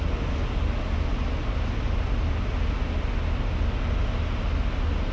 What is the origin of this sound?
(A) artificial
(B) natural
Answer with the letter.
B